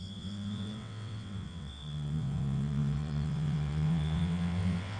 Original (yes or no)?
no